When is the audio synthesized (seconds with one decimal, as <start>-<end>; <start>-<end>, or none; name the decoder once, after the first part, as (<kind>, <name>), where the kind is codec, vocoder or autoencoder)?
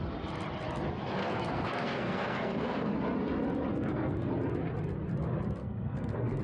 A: 1.2-2.9 (codec, SNAC); 3.7-4.3; 5.6-6.4